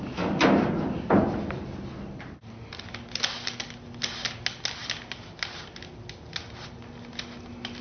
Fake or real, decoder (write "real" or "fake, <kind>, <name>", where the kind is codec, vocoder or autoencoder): real